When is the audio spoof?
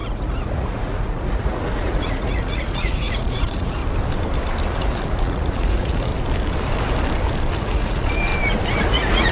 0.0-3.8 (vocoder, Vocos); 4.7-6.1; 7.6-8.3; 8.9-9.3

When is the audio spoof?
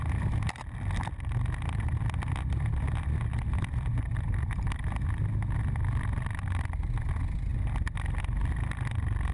none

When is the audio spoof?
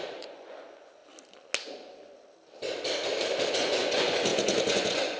0.0-1.0 (vocoder, Vocos); 3.5-5.2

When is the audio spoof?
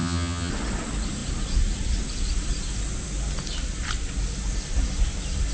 0.0-0.5 (vocoder, HiFi-GAN)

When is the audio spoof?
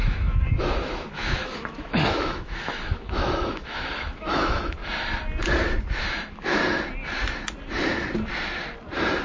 0.0-4.8 (autoencoder, DAC-VAE); 6.0-6.6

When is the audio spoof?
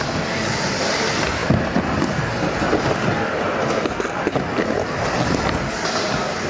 none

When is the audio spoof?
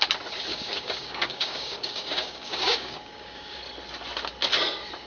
0.5-3.6 (codec, DAC)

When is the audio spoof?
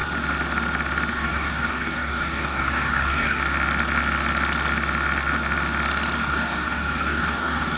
1.1-3.4 (codec, DAC); 6.2-7.8